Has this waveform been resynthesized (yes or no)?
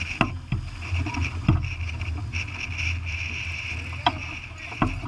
no